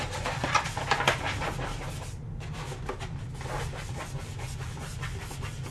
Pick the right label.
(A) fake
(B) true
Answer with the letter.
B